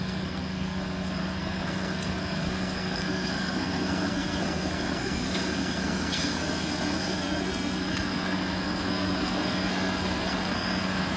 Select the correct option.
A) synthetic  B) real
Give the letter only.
A